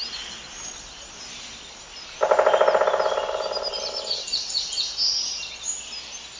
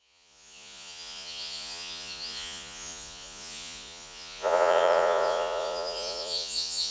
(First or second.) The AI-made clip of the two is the second